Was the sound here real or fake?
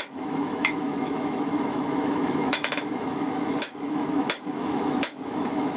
fake